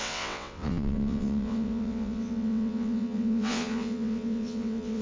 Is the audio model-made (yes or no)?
yes